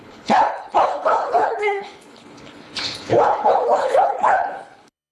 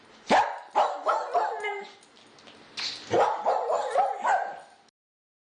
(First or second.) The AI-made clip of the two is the first